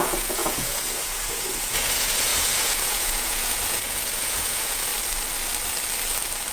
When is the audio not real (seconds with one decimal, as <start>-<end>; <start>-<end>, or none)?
0.0-4.9